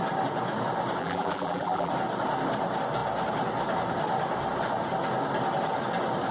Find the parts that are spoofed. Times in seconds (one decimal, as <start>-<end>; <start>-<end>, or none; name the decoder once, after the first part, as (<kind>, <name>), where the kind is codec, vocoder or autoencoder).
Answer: 1.0-1.9 (vocoder, BigVGAN v2)